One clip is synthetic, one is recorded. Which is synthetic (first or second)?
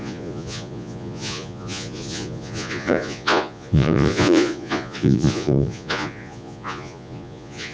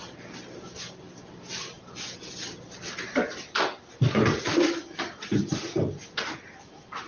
first